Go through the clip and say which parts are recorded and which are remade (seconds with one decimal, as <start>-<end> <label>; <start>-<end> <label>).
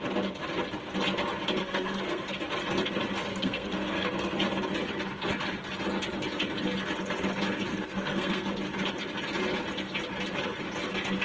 0.0-1.6 recorded; 1.6-2.2 remade; 2.2-3.3 recorded; 3.3-4.3 remade; 4.3-7.7 recorded; 7.7-8.5 remade; 8.5-11.2 recorded